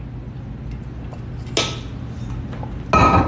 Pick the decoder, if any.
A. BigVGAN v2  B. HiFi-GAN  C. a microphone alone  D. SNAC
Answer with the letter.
C